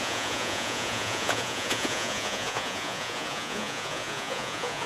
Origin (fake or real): fake